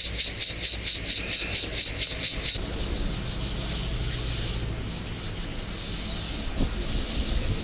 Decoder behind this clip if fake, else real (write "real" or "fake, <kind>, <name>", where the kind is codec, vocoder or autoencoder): real